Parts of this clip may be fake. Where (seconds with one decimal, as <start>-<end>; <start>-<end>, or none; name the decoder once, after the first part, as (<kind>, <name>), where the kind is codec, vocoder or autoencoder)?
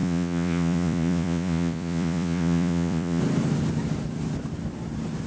0.0-3.2 (vocoder, Vocos)